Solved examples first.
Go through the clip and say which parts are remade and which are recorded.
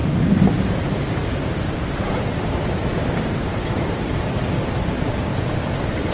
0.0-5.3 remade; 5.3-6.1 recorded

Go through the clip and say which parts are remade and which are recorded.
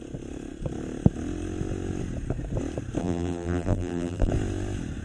0.0-3.0 recorded; 3.0-4.3 remade; 4.3-5.0 recorded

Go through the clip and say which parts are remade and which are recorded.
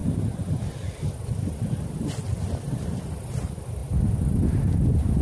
0.0-1.1 recorded; 1.1-3.8 remade; 3.8-5.2 recorded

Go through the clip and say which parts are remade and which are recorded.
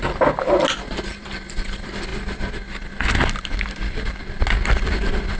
0.0-5.4 recorded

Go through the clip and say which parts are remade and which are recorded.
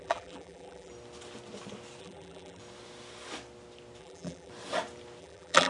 0.0-0.9 remade; 0.9-2.0 recorded; 2.0-2.6 remade; 2.6-4.0 recorded; 4.0-4.5 remade; 4.5-5.2 recorded; 5.2-5.7 remade